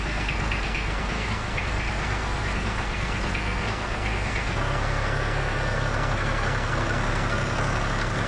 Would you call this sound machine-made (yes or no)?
yes